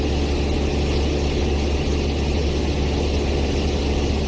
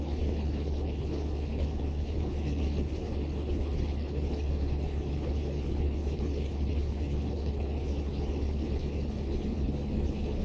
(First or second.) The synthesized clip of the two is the second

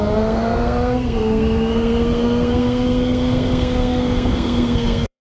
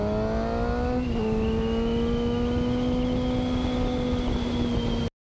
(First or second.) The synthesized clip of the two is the first